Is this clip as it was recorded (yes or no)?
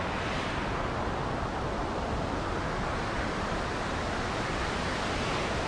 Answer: yes